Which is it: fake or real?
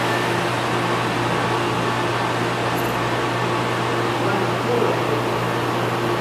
real